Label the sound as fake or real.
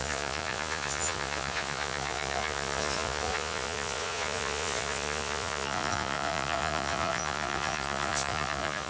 fake